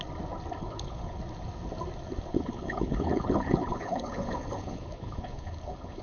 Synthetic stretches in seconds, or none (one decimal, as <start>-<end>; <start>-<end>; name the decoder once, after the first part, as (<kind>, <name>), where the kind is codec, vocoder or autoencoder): 0.6-1.2 (codec, HILCodec); 2.3-6.0